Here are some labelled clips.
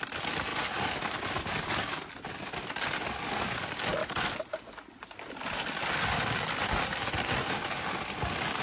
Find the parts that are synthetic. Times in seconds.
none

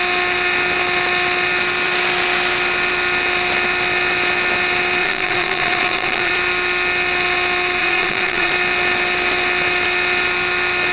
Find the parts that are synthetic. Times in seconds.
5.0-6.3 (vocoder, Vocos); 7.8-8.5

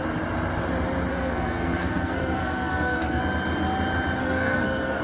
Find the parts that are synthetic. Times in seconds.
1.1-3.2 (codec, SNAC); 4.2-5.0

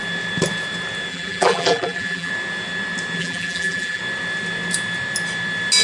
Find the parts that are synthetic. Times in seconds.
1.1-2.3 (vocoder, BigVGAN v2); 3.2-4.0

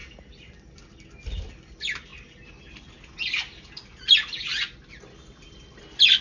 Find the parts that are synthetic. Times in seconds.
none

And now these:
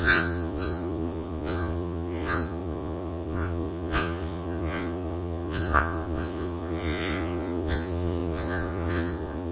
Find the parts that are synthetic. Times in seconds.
0.0-9.5 (vocoder, Vocos)

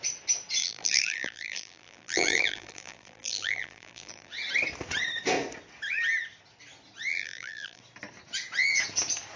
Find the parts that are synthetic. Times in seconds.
0.6-4.3 (vocoder, BigVGAN v2); 7.1-7.8